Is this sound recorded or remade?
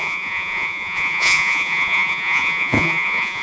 remade